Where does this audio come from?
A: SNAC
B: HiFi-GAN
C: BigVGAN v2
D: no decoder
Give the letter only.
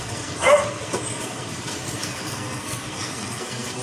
A